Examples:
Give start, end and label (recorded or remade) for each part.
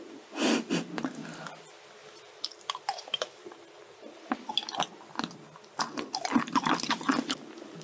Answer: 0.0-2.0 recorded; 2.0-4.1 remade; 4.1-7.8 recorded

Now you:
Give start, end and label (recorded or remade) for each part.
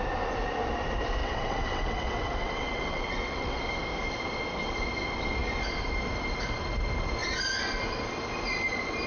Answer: 0.0-1.2 recorded; 1.2-3.6 remade; 3.6-9.1 recorded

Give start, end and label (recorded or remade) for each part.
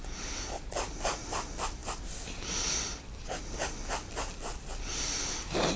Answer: 0.0-5.8 recorded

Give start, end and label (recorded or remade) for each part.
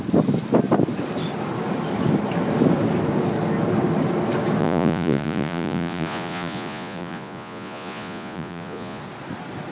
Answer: 0.0-4.6 recorded; 4.6-9.0 remade; 9.0-9.7 recorded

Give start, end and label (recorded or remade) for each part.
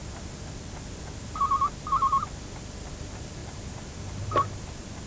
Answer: 0.0-5.1 recorded